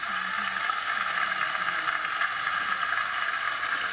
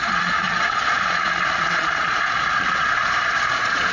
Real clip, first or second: first